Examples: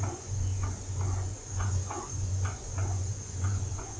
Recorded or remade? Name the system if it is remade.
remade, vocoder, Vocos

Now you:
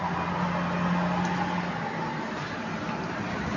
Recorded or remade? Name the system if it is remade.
recorded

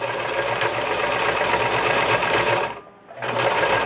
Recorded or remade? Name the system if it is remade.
recorded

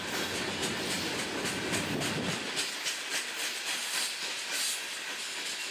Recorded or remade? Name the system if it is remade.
recorded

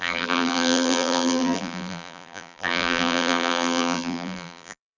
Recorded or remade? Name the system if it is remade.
remade, vocoder, BigVGAN v2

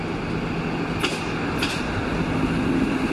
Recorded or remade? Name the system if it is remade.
recorded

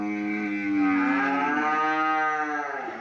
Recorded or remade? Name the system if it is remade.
recorded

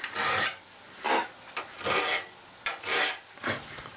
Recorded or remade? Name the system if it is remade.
recorded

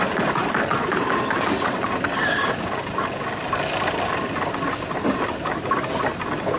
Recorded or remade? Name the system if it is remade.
recorded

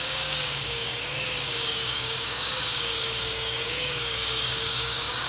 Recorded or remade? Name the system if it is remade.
remade, codec, DAC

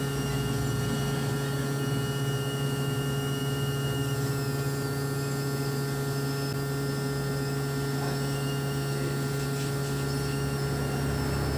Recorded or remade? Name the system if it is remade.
recorded